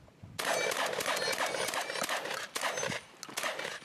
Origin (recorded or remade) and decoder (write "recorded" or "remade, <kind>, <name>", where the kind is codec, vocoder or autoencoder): recorded